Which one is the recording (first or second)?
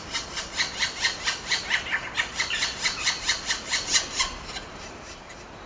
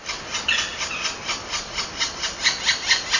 second